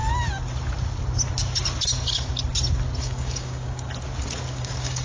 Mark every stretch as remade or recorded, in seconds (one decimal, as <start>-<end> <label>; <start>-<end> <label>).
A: 0.0-3.0 recorded; 3.0-3.9 remade; 3.9-4.5 recorded; 4.5-5.0 remade